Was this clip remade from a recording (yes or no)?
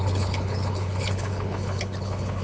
yes